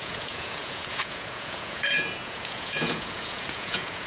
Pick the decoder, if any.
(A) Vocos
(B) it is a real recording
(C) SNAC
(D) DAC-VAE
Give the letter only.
A